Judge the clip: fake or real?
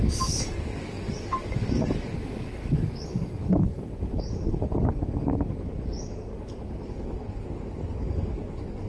fake